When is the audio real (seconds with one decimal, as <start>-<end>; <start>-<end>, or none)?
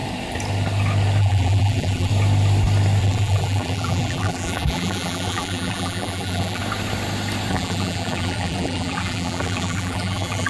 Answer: 0.0-1.2; 2.1-3.0; 6.6-7.5